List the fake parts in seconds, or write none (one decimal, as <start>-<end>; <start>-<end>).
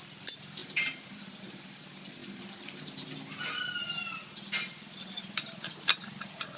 none